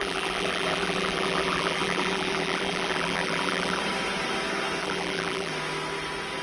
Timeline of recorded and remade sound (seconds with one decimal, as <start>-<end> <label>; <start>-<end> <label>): 0.0-3.8 remade; 3.8-4.8 recorded; 4.8-5.5 remade; 5.5-6.4 recorded